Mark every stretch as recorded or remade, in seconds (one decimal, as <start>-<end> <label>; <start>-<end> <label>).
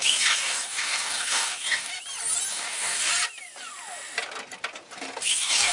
0.0-1.9 remade; 1.9-2.5 recorded; 2.5-3.1 remade; 3.1-5.2 recorded; 5.2-5.7 remade